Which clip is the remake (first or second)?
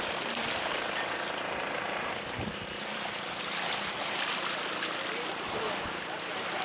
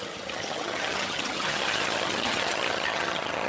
second